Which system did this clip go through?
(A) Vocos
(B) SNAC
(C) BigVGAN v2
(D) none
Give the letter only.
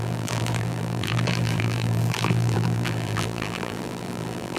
C